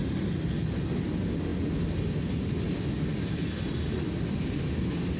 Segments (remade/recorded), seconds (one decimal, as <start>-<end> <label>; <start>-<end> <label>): 0.0-5.2 recorded